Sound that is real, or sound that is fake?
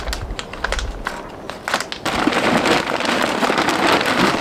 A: real